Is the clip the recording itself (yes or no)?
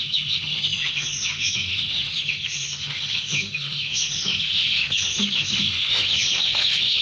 no